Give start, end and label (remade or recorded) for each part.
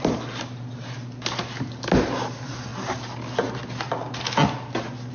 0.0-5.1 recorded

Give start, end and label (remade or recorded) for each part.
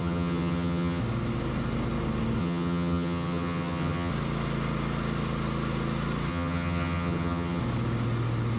0.0-1.0 remade; 1.0-2.4 recorded; 2.4-4.1 remade; 4.1-6.3 recorded; 6.3-7.6 remade; 7.6-8.6 recorded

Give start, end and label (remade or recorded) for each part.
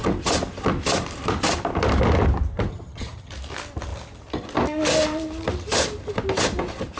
0.0-2.7 recorded; 2.7-3.3 remade; 3.3-7.0 recorded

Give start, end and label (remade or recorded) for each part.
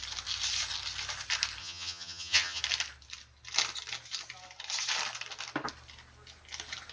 0.0-1.6 recorded; 1.6-2.6 remade; 2.6-6.9 recorded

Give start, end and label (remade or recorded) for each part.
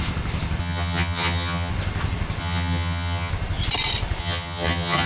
0.0-0.6 recorded; 0.6-1.7 remade; 1.7-2.4 recorded; 2.4-3.3 remade; 3.3-4.2 recorded; 4.2-5.1 remade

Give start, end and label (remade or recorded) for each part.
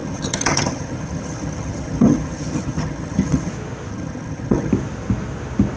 0.0-3.5 remade; 3.5-3.9 recorded; 3.9-4.7 remade; 4.7-5.8 recorded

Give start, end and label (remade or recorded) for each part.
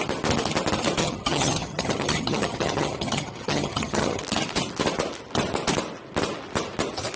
0.0-1.0 recorded; 1.0-4.2 remade; 4.2-7.2 recorded